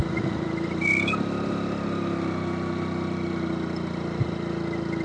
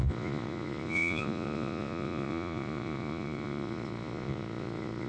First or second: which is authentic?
first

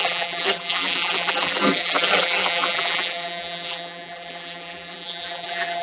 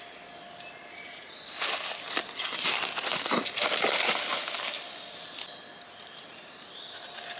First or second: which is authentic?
second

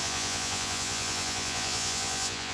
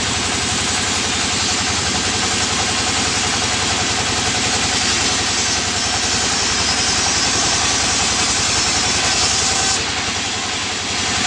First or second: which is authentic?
second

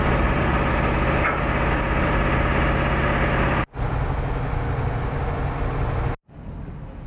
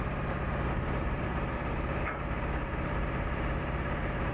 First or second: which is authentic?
first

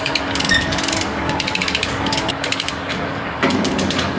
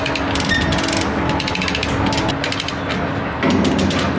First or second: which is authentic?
second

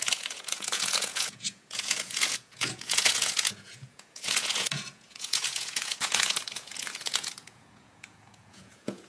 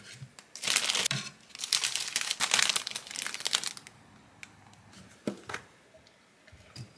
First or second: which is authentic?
second